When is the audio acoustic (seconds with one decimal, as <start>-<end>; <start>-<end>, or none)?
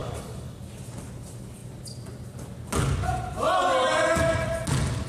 0.6-5.1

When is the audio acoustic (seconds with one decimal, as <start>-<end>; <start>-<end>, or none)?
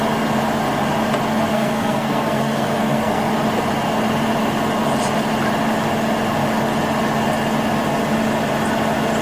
0.0-1.5; 3.3-9.2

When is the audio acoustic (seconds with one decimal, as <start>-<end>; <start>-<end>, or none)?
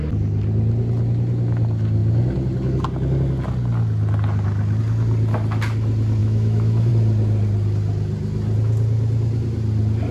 0.0-6.2; 6.9-10.1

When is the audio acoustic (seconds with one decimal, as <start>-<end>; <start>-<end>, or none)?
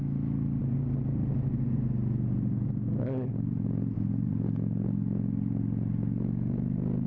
0.0-7.1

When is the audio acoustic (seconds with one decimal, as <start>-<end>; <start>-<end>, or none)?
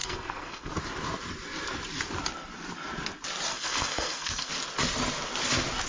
0.7-3.5; 4.5-5.9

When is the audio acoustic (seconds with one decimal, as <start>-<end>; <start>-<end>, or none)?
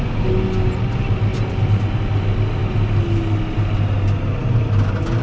0.0-5.2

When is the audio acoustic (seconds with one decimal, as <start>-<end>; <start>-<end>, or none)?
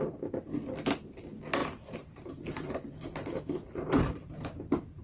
0.0-1.6; 4.6-5.0